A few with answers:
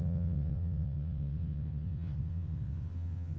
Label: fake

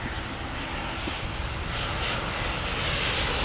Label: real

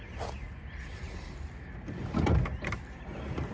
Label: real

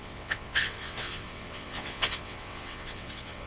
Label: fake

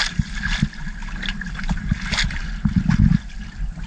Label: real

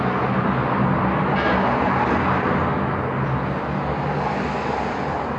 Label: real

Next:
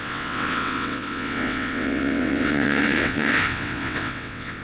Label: fake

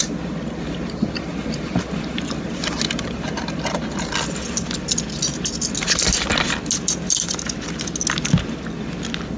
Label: real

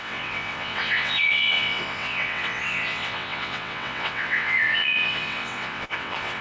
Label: fake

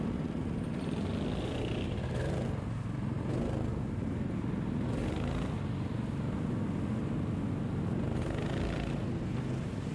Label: real